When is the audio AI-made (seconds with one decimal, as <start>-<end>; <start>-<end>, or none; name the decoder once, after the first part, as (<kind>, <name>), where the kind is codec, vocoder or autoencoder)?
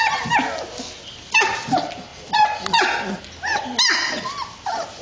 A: none